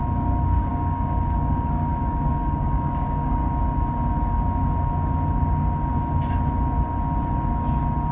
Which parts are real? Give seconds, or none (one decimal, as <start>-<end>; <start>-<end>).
3.6-8.1